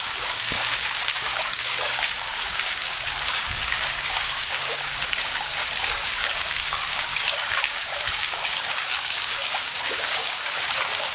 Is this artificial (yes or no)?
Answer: yes